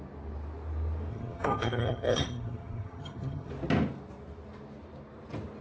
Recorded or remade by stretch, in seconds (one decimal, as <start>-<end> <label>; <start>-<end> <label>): 0.0-1.1 recorded; 1.1-3.5 remade; 3.5-5.6 recorded